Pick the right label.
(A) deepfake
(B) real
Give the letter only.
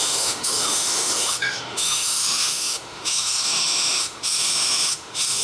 A